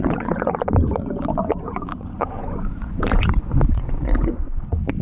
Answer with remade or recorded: remade